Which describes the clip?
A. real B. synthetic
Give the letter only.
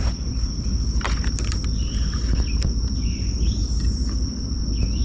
A